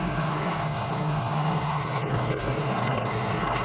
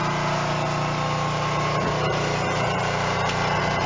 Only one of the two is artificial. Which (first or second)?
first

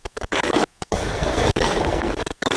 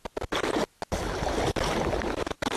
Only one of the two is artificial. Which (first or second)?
first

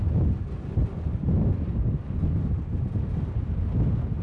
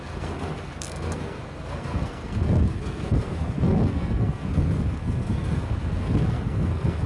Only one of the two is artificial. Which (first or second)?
second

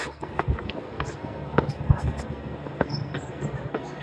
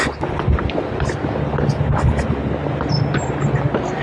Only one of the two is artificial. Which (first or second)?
first